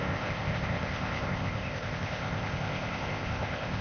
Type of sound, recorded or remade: remade